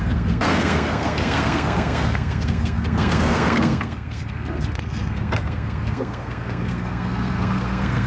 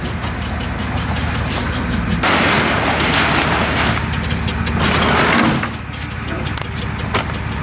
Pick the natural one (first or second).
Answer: second